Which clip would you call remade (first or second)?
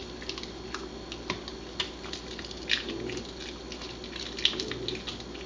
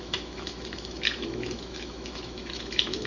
second